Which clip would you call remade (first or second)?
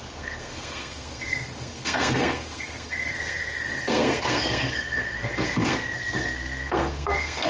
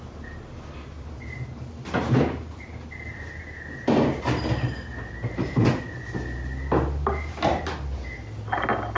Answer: first